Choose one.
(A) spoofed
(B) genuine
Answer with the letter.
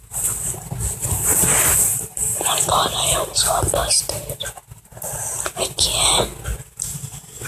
B